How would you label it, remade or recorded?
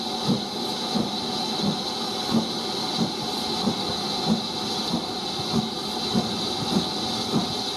recorded